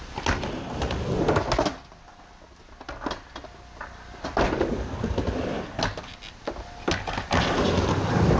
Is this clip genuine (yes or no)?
yes